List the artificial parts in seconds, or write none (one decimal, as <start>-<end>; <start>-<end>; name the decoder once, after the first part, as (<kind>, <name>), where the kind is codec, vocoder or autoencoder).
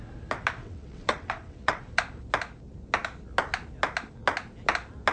0.6-1.8 (vocoder, WaveNeXt)